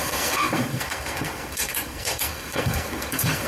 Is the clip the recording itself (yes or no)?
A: no